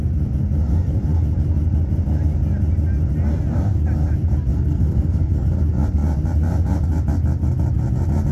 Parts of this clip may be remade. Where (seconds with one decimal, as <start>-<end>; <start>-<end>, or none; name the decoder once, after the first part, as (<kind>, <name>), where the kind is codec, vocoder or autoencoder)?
4.5-5.5 (codec, SNAC)